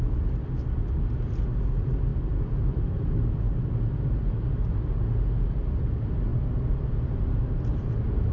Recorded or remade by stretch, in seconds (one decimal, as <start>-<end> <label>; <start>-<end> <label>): 0.0-8.3 recorded